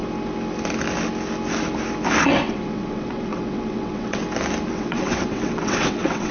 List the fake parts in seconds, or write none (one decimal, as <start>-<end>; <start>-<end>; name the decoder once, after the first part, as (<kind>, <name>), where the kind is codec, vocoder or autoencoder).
2.2-4.2 (vocoder, WaveNeXt); 4.7-6.3